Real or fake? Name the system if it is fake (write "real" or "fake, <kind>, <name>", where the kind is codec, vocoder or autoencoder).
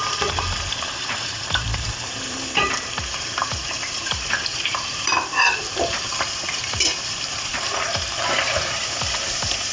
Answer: fake, vocoder, BigVGAN v2